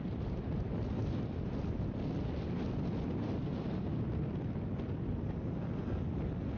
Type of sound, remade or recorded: recorded